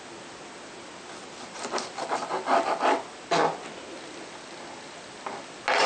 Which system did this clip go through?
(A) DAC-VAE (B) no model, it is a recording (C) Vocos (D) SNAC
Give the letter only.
B